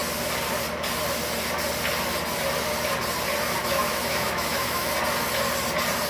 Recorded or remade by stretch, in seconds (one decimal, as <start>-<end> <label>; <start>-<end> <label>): 0.0-3.6 recorded; 3.6-4.9 remade; 4.9-6.1 recorded